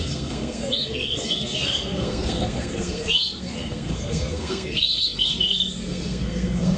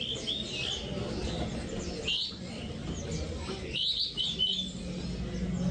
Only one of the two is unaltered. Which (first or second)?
second